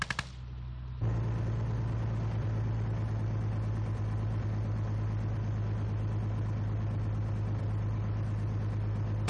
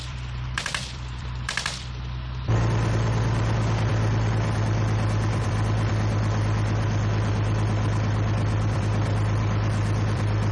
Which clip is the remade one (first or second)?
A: second